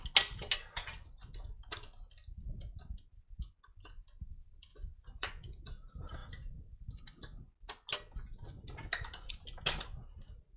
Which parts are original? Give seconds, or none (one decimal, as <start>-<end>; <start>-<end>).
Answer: 0.0-4.7; 5.6-10.6